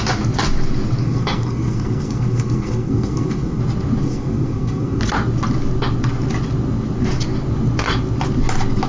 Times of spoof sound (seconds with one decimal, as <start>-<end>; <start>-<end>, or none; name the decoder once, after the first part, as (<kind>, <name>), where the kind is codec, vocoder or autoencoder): 1.0-3.6 (codec, SNAC); 4.0-5.0